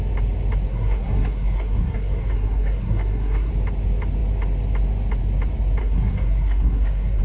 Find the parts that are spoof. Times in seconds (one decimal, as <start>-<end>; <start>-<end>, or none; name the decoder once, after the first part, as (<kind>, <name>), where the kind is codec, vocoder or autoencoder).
0.7-3.5 (codec, SNAC); 5.8-7.2